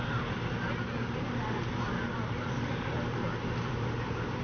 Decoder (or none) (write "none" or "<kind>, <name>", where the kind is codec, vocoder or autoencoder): none